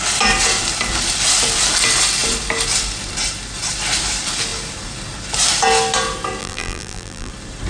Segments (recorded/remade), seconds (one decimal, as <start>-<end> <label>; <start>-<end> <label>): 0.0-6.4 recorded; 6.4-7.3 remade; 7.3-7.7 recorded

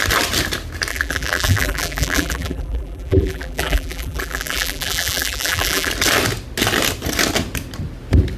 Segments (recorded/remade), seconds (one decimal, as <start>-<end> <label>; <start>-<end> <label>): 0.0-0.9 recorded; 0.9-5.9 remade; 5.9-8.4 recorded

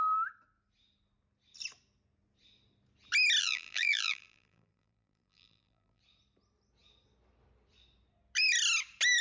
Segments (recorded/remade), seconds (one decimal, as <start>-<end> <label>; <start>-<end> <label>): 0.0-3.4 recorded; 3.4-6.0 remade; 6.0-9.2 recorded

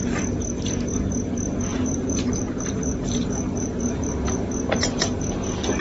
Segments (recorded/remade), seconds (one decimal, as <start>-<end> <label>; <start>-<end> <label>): 0.0-1.7 recorded; 1.7-5.2 remade; 5.2-5.8 recorded